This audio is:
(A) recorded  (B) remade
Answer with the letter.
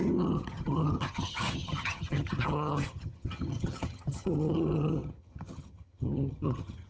B